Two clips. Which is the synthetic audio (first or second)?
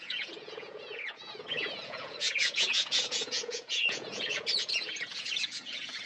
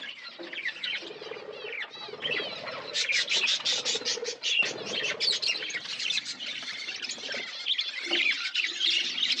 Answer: first